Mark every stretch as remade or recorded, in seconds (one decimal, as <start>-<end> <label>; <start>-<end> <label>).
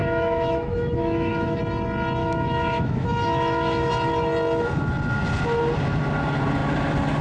0.0-1.6 remade; 1.6-2.2 recorded; 2.2-3.9 remade; 3.9-7.2 recorded